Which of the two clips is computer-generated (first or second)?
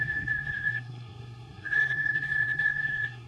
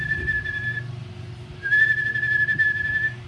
first